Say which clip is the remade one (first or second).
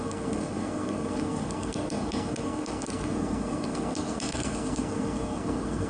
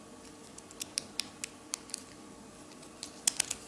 first